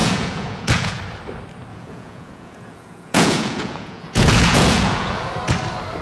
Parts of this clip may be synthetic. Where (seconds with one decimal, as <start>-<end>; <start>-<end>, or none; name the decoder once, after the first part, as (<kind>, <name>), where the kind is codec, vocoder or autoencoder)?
0.0-1.0 (vocoder, Vocos); 1.7-5.3